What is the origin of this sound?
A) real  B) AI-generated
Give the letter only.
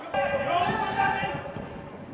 B